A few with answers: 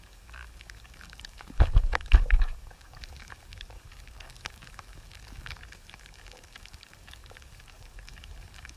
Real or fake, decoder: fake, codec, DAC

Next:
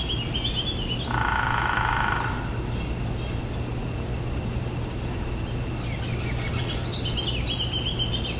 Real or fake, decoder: real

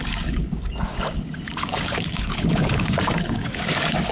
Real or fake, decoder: fake, codec, DAC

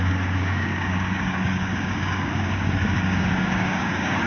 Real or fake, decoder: fake, codec, DAC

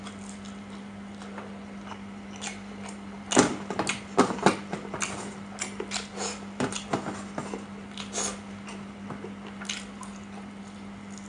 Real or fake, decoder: real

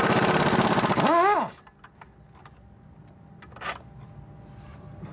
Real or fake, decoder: real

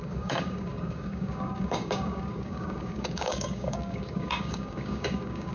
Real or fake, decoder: fake, codec, DAC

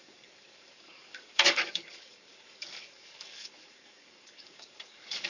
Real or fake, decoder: fake, codec, DAC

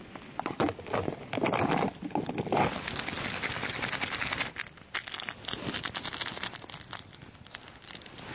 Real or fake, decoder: real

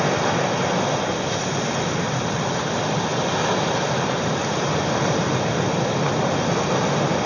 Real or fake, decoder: real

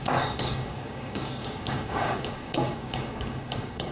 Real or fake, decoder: fake, codec, DAC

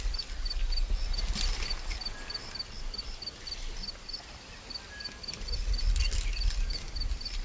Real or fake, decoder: real